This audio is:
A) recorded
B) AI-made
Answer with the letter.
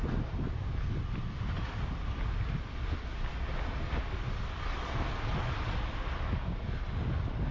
A